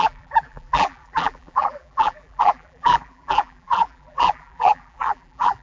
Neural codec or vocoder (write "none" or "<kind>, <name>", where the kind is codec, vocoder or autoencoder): vocoder, BigVGAN v2